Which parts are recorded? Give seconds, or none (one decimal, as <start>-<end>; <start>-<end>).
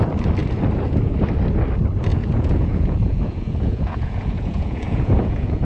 0.0-2.1